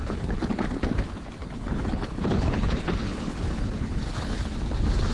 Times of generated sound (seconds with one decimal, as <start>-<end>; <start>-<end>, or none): 0.0-0.6; 1.4-4.5